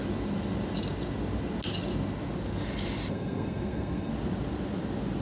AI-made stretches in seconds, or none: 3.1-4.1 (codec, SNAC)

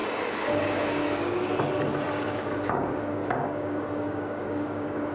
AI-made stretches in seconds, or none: 0.5-1.5 (codec, DAC); 2.1-5.1

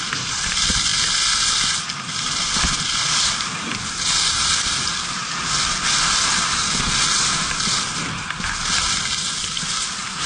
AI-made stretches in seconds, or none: none

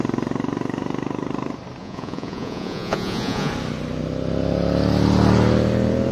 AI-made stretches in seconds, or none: 1.8-3.5 (vocoder, Vocos)

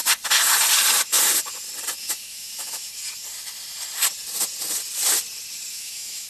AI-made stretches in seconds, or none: 2.0-3.0 (autoencoder, DAC-VAE); 5.7-6.3

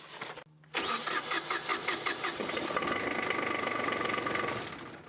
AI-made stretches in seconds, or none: none

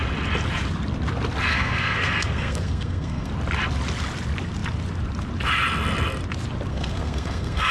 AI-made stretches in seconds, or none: 1.5-3.3 (codec, SNAC); 6.7-7.7